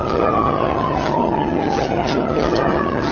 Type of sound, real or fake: fake